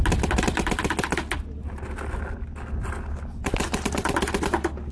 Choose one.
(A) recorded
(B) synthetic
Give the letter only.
A